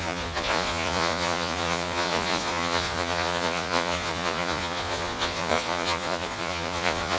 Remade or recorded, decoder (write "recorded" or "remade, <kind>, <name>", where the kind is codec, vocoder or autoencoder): remade, vocoder, Vocos